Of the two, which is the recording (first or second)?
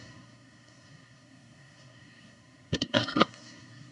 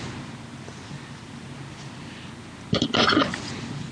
second